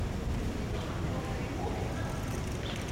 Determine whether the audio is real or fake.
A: fake